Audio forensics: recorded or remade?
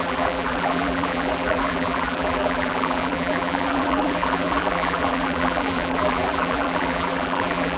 remade